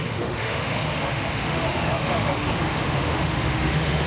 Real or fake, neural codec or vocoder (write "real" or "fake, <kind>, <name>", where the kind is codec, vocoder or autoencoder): fake, autoencoder, DAC-VAE